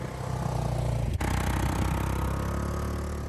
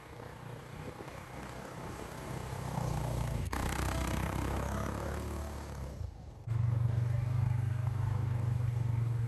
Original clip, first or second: first